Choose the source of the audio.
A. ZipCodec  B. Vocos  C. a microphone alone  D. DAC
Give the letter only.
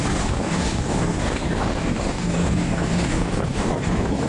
D